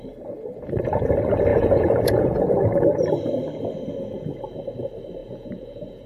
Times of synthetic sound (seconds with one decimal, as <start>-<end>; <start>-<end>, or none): 1.5-2.4; 5.2-6.1